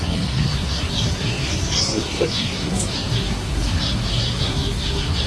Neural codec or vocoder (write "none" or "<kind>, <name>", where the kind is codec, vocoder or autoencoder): codec, SNAC